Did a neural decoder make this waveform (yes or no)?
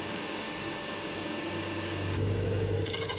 yes